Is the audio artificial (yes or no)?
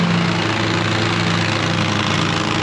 no